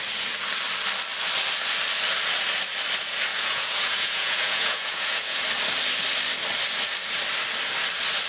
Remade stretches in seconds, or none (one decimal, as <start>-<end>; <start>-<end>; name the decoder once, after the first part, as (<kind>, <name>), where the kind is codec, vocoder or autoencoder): 3.3-5.4 (vocoder, Vocos)